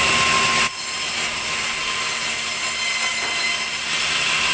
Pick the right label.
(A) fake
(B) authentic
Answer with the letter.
B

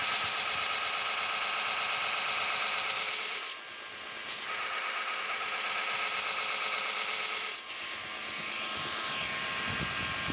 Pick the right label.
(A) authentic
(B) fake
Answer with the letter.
A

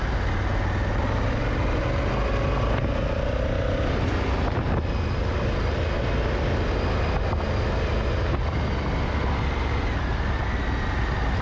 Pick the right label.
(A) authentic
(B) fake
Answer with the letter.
A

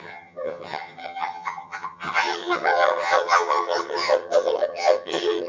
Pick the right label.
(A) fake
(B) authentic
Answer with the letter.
A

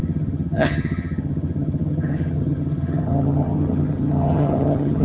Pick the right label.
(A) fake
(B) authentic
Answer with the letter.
A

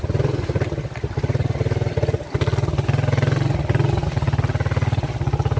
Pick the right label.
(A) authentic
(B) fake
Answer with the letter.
A